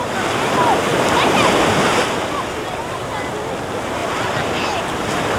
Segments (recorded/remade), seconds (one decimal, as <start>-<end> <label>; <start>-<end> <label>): 0.0-5.4 recorded